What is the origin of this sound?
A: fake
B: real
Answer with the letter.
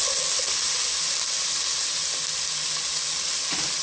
B